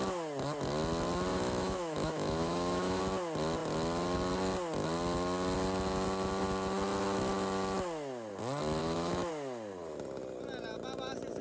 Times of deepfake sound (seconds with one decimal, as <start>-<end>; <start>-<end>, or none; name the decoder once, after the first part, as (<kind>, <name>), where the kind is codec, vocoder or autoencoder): 1.3-3.0 (autoencoder, DAC-VAE); 8.8-9.3